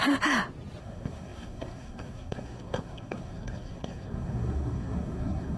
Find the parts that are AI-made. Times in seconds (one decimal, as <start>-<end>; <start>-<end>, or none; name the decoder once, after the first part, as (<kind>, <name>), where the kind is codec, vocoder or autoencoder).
0.8-5.6 (codec, SNAC)

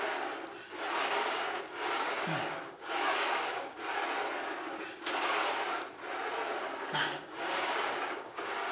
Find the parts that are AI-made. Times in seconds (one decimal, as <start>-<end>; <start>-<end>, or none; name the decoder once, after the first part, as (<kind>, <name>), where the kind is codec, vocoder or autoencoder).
1.0-3.8 (codec, DAC); 6.6-8.7